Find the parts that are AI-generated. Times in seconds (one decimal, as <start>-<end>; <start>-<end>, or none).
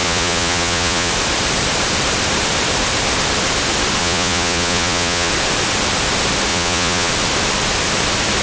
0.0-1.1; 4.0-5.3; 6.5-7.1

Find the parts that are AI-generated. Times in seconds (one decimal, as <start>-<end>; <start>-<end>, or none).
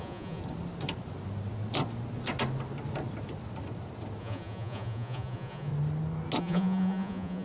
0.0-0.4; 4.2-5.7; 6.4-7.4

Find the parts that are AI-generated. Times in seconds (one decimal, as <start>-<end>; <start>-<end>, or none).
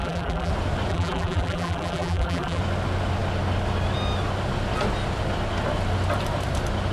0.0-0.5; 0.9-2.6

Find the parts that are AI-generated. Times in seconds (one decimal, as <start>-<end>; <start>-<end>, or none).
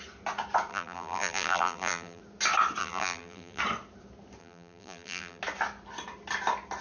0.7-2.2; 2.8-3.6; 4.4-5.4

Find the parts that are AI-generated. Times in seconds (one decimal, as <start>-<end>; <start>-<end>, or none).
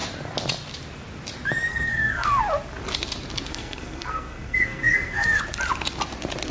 1.7-2.4; 3.5-5.4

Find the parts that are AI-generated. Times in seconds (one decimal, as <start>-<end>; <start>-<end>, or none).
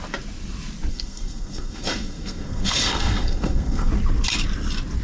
0.9-3.9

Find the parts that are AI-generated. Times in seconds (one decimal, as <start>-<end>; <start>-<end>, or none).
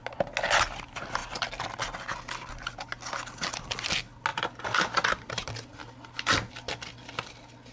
4.3-5.5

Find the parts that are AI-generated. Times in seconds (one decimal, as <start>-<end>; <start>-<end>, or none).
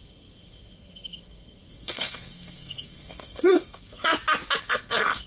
0.0-4.1; 4.6-5.3